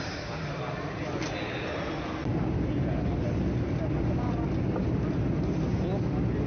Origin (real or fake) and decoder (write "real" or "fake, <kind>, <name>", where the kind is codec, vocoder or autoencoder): real